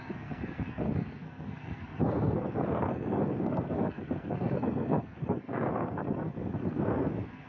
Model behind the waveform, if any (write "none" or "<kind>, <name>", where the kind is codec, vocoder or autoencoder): codec, SNAC